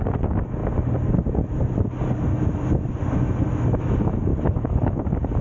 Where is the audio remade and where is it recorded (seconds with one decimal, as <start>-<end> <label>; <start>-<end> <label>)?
0.0-4.3 recorded; 4.3-5.0 remade; 5.0-5.4 recorded